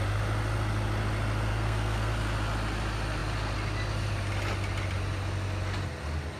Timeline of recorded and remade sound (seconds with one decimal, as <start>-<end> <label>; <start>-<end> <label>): 0.0-1.5 recorded; 1.5-2.1 remade; 2.1-6.4 recorded